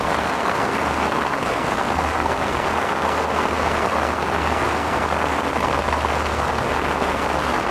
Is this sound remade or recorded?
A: remade